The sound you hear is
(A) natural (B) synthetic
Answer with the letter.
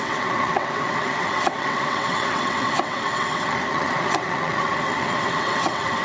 B